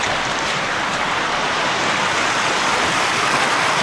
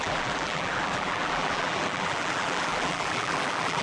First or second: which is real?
first